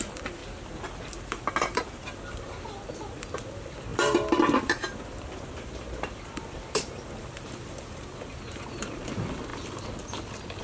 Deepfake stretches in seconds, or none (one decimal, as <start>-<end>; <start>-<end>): 0.0-0.4; 1.1-10.6